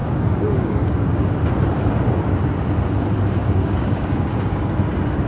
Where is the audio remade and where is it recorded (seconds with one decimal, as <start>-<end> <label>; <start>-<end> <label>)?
0.0-1.5 remade; 1.5-3.4 recorded; 3.4-4.7 remade; 4.7-5.3 recorded

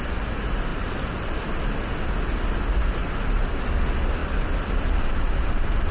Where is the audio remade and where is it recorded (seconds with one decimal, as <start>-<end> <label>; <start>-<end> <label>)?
0.0-5.9 recorded

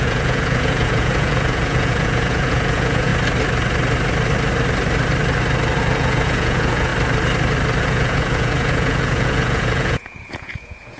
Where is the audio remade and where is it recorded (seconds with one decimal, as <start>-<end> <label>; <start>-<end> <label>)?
0.0-3.1 remade; 3.1-5.8 recorded; 5.8-6.9 remade; 6.9-7.8 recorded; 7.8-11.0 remade

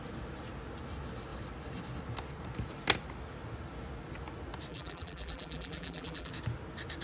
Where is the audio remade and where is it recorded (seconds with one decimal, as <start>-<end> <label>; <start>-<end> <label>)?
0.0-4.7 recorded; 4.7-6.3 remade; 6.3-7.0 recorded

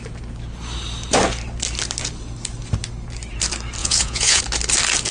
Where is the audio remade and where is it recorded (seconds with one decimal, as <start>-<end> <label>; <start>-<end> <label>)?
0.0-3.8 recorded; 3.8-4.4 remade; 4.4-5.1 recorded

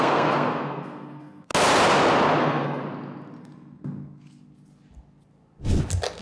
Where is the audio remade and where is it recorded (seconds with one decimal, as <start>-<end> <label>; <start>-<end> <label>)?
0.0-1.5 remade; 1.5-2.4 recorded; 2.4-2.8 remade; 2.8-3.4 recorded; 3.4-4.4 remade; 4.4-6.2 recorded

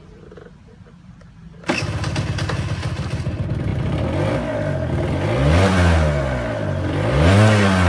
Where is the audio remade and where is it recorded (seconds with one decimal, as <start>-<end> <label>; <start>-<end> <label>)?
0.0-7.9 recorded

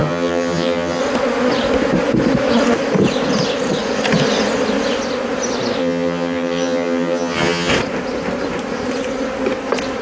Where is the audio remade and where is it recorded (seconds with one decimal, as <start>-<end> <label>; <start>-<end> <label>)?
0.0-1.0 remade; 1.0-5.8 recorded; 5.8-7.7 remade; 7.7-10.0 recorded